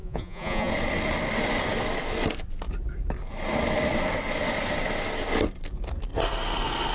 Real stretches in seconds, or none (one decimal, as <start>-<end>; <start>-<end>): 0.7-6.9